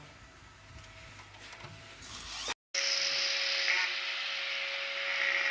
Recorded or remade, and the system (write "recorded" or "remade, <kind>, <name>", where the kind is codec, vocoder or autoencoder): recorded